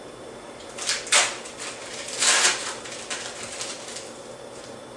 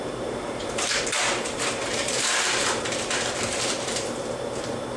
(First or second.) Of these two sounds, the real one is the first